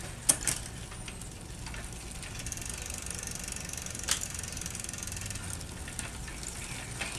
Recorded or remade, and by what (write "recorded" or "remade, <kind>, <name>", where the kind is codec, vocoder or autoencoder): recorded